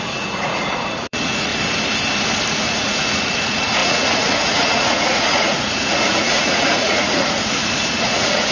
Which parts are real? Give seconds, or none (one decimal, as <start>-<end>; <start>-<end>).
1.5-2.5